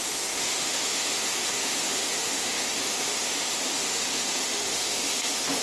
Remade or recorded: remade